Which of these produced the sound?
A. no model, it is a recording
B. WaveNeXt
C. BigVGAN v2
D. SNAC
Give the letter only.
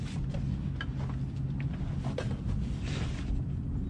A